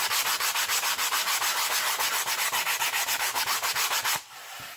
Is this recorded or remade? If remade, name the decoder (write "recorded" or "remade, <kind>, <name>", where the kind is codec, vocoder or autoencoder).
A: recorded